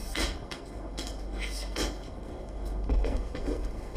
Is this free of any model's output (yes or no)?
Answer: no